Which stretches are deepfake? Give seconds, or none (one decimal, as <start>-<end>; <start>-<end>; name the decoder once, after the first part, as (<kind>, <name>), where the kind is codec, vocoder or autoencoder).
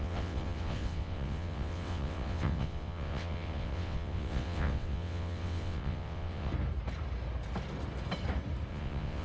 0.0-6.5 (vocoder, WaveNeXt); 8.7-9.2